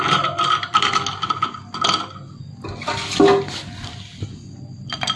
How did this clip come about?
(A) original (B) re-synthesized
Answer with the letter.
A